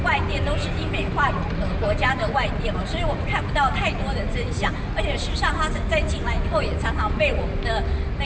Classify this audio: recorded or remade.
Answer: recorded